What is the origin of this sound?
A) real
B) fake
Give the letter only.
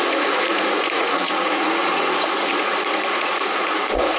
B